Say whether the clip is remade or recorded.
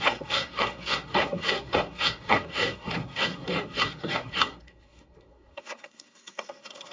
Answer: remade